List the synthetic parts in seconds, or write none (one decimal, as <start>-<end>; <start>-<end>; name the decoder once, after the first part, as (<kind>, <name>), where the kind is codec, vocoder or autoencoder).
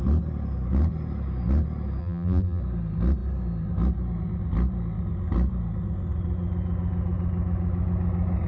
2.0-2.6 (vocoder, BigVGAN v2)